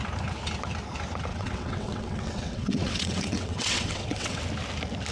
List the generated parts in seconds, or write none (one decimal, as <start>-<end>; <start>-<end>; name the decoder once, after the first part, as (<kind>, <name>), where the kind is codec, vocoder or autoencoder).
1.3-4.4 (vocoder, WaveNeXt)